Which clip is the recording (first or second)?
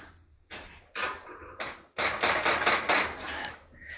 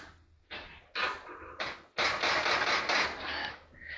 second